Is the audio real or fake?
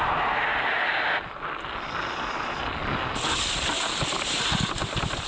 real